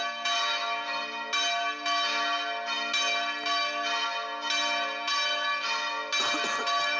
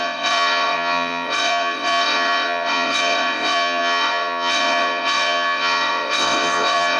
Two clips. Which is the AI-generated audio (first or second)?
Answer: second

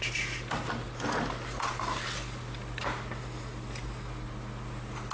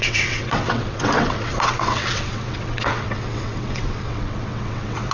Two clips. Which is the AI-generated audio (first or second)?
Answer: second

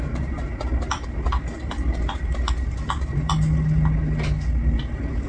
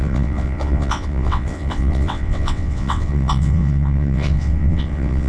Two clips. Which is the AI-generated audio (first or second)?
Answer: second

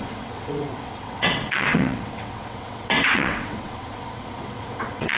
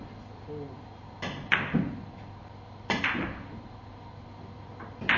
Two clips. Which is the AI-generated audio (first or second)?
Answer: first